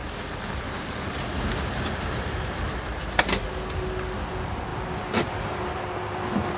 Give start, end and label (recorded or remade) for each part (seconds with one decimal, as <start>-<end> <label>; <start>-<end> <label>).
0.0-6.6 recorded